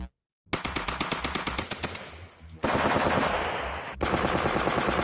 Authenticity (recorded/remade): recorded